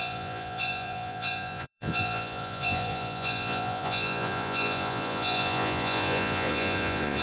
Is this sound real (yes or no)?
no